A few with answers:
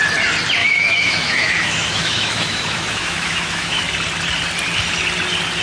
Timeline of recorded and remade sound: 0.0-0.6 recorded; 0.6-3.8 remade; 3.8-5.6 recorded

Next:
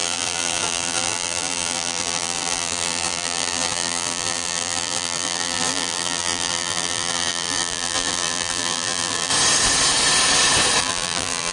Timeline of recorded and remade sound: 0.0-9.3 remade; 9.3-10.8 recorded; 10.8-11.5 remade

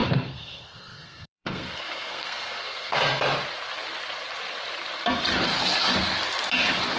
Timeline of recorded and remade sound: 0.0-3.2 remade; 3.2-7.0 recorded

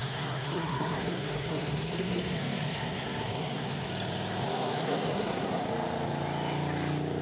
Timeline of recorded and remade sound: 0.0-3.9 remade; 3.9-4.5 recorded; 4.5-5.7 remade; 5.7-7.2 recorded

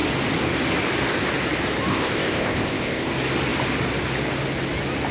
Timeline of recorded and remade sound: 0.0-1.9 recorded; 1.9-3.1 remade; 3.1-5.1 recorded

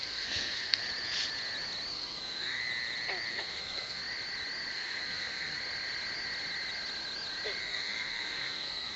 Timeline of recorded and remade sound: 0.0-0.8 remade; 0.8-1.9 recorded; 1.9-2.6 remade; 2.6-3.3 recorded; 3.3-4.0 remade; 4.0-4.7 recorded; 4.7-5.6 remade; 5.6-7.6 recorded; 7.6-9.0 remade